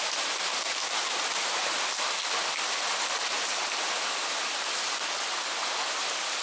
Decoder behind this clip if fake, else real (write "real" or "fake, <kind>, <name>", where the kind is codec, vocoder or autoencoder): real